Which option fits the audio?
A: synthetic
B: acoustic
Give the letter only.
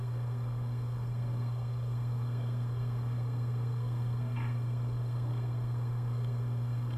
A